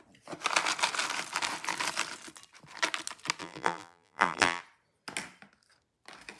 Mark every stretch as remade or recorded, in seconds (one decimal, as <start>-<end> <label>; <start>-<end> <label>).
0.0-3.4 recorded; 3.4-4.6 remade; 4.6-6.4 recorded